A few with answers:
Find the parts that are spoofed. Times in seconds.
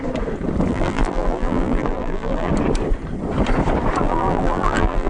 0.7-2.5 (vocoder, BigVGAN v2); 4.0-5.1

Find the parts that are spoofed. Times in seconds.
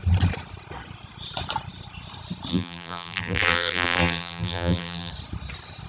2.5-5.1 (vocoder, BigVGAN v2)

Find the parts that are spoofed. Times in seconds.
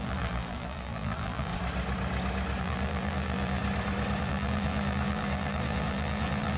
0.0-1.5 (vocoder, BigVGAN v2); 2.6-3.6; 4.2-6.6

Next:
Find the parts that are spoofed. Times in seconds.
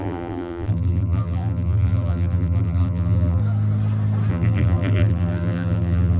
0.0-3.4 (vocoder, BigVGAN v2); 4.3-6.2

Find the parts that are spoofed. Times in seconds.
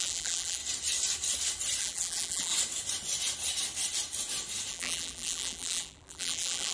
0.0-0.6 (vocoder, BigVGAN v2); 1.8-2.5; 4.7-6.7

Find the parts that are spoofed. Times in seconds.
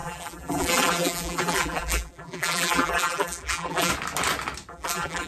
0.0-3.9 (vocoder, BigVGAN v2); 4.7-5.3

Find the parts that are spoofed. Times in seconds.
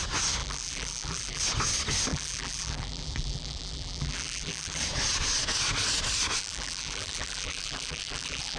0.4-1.4 (vocoder, BigVGAN v2); 2.1-4.8; 6.4-8.6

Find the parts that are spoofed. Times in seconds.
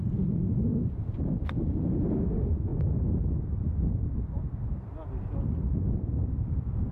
0.7-2.3 (vocoder, BigVGAN v2); 2.7-6.9